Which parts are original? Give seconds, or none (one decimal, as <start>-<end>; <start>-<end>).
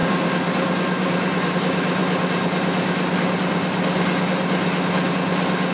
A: 1.5-5.7